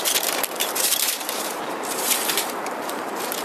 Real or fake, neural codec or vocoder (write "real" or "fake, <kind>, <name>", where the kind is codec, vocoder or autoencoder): fake, vocoder, BigVGAN v2